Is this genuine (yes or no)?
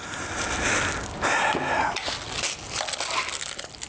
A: yes